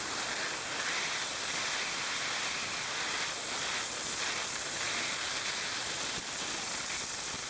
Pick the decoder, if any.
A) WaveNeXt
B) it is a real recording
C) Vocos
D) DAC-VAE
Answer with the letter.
B